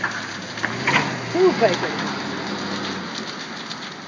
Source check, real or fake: real